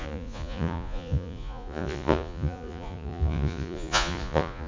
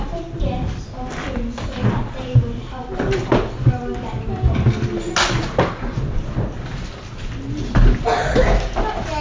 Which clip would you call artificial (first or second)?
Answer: first